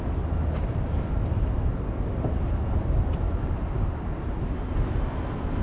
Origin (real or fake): real